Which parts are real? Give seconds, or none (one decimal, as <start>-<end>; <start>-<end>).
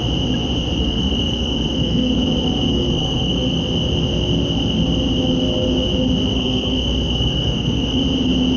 0.0-0.8; 2.2-2.7; 3.6-6.3; 8.0-8.6